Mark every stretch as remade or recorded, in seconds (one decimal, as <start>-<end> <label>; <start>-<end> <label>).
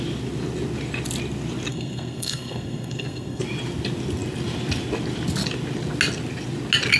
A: 0.0-1.7 recorded; 1.7-3.4 remade; 3.4-7.0 recorded